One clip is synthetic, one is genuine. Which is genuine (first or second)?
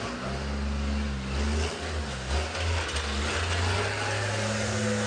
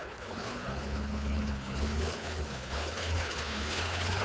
first